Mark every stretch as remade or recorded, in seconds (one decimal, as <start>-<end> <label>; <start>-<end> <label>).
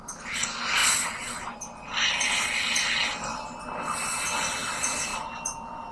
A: 0.0-5.9 recorded